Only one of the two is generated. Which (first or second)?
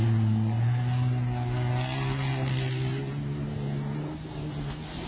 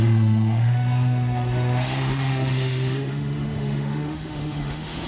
second